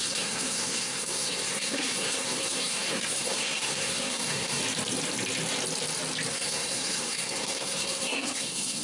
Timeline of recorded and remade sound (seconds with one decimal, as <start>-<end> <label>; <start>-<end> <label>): 0.0-4.6 remade; 4.6-6.3 recorded; 6.3-8.8 remade